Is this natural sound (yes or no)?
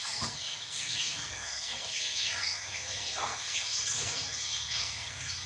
no